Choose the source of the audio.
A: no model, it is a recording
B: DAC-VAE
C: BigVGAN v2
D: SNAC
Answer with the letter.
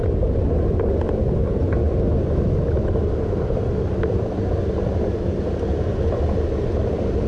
A